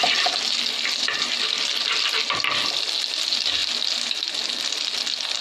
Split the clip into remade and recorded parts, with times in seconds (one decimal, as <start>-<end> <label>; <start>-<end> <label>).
0.0-5.4 recorded